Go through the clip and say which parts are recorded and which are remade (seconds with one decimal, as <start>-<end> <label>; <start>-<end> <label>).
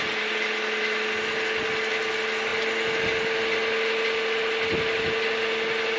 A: 0.0-6.0 recorded